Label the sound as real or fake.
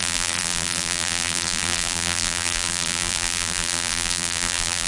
fake